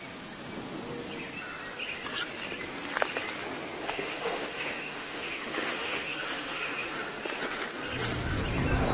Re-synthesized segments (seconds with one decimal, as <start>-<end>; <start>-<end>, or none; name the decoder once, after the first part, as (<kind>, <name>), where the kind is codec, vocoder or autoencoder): 3.8-7.4 (autoencoder, DAC-VAE)